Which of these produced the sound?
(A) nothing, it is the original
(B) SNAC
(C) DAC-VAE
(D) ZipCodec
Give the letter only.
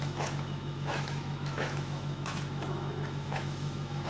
C